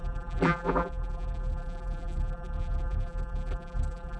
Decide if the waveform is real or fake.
fake